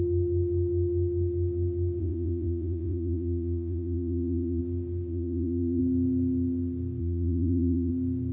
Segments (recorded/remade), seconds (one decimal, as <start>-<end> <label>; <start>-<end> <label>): 0.0-2.0 recorded; 2.0-4.6 remade; 4.6-5.1 recorded; 5.1-5.8 remade; 5.8-7.0 recorded; 7.0-7.9 remade; 7.9-8.3 recorded